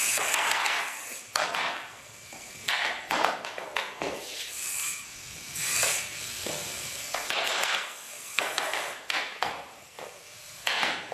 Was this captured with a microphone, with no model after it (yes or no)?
no